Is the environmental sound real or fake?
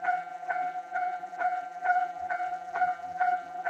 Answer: fake